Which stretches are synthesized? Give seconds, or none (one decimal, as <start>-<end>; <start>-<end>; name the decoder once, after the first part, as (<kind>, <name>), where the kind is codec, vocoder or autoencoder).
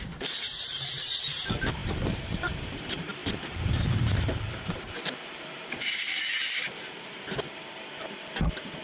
0.0-8.8 (vocoder, BigVGAN v2)